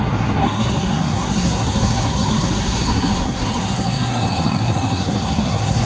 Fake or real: fake